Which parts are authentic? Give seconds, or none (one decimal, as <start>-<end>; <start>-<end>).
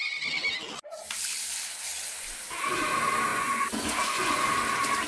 0.0-3.3; 4.5-5.1